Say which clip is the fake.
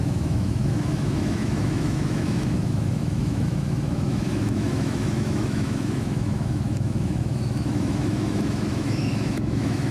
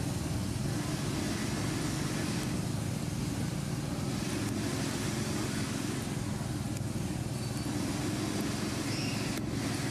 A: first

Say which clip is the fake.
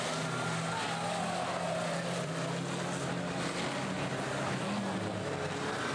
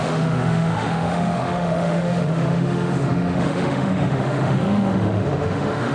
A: second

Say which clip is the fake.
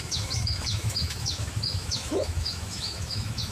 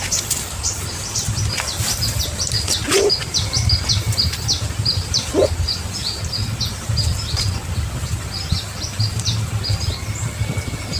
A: first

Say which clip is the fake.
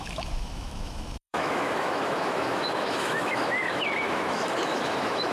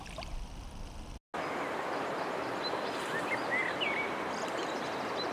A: first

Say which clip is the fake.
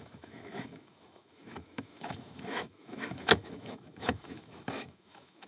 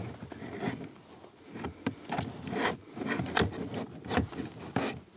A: first